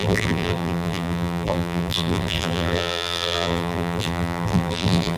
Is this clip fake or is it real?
fake